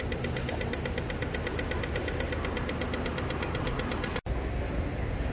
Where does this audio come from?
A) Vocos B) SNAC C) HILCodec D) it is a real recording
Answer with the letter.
D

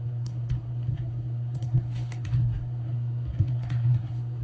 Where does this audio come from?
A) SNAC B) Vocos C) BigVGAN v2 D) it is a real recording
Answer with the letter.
A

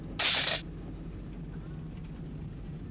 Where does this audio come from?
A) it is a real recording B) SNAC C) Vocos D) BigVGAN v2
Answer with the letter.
A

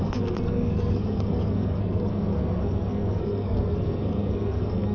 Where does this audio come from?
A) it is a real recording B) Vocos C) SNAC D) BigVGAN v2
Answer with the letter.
C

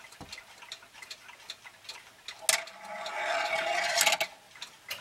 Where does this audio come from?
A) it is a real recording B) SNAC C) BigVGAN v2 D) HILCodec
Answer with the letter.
A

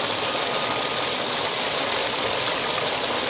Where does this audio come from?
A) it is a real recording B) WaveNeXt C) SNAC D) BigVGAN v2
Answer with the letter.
A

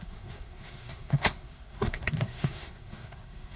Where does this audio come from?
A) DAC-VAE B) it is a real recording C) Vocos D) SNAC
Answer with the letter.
D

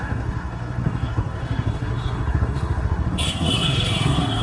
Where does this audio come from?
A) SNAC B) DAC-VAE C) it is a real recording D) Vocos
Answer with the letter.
A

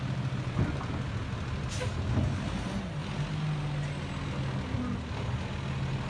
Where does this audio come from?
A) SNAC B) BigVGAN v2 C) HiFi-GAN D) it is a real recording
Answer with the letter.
D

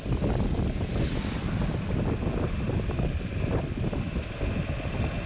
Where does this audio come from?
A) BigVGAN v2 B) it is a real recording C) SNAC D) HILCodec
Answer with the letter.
B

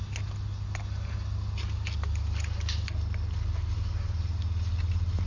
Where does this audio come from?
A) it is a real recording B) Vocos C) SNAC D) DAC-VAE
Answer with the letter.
A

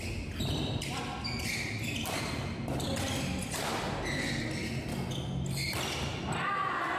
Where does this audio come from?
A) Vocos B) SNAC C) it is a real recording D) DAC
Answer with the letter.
C